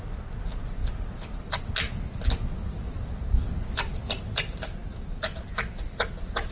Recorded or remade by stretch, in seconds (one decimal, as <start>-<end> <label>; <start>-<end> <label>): 0.0-6.5 recorded